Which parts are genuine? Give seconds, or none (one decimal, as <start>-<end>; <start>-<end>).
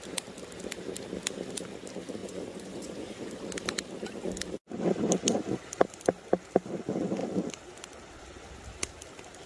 0.0-2.2; 3.4-9.5